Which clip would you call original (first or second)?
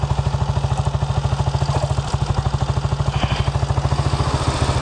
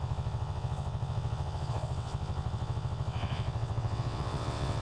first